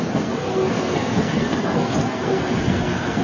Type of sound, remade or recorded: remade